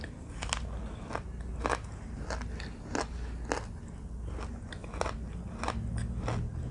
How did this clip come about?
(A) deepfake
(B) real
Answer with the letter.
B